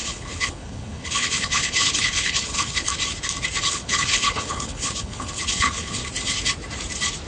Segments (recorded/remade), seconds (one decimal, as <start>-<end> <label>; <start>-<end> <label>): 0.0-2.9 remade; 2.9-3.6 recorded; 3.6-6.0 remade; 6.0-7.3 recorded